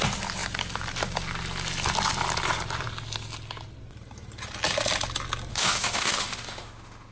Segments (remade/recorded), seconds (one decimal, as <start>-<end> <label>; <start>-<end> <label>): 0.0-5.5 recorded; 5.5-7.1 remade